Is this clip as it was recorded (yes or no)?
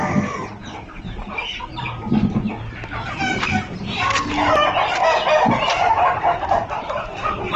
yes